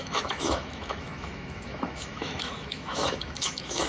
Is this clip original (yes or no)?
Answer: no